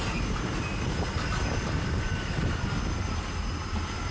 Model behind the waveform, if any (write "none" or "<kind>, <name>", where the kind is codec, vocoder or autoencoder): none